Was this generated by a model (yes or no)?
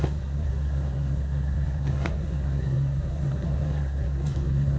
yes